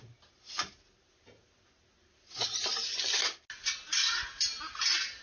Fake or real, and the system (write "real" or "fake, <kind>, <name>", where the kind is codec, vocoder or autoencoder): real